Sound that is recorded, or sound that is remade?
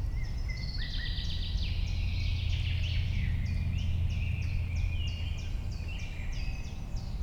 recorded